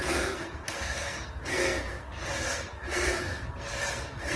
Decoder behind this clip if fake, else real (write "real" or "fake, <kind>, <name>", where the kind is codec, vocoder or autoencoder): fake, codec, SNAC